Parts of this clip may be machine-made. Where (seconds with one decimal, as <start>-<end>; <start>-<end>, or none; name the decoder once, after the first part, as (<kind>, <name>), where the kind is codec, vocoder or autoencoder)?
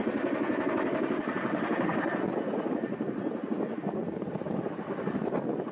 none